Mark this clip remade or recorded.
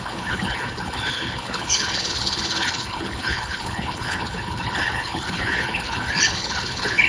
remade